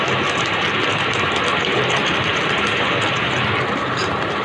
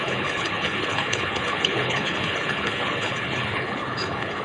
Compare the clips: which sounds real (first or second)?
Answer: first